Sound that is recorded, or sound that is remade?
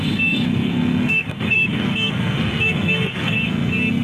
remade